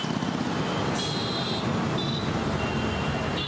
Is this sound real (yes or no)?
yes